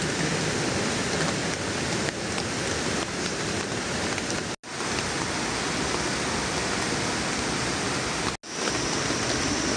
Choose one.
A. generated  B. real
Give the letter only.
B